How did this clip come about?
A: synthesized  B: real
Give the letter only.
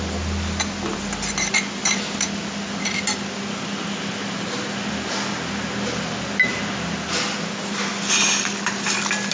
B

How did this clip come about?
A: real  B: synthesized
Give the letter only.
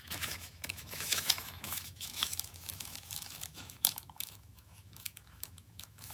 B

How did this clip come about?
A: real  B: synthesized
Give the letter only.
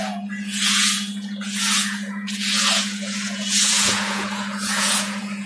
B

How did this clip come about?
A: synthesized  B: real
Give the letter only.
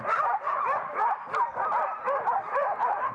A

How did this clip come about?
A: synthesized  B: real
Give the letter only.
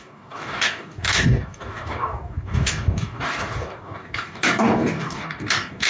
A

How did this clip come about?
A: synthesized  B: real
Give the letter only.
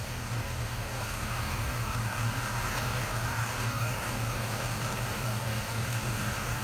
A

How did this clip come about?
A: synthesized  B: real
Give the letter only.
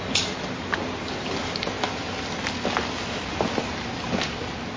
B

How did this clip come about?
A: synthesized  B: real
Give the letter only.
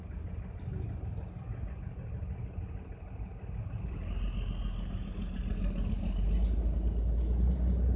B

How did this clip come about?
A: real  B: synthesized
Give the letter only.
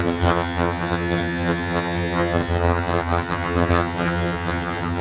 B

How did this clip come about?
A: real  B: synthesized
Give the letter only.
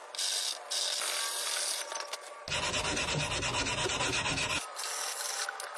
A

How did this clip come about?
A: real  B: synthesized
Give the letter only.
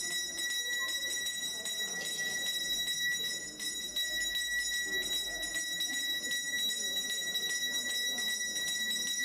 A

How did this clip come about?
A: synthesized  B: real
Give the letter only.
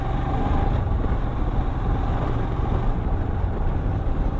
B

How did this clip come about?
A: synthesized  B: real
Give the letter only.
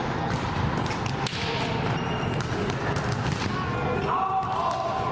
B